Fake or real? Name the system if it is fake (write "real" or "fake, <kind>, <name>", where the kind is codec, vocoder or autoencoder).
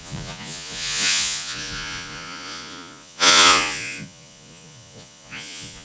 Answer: fake, vocoder, Vocos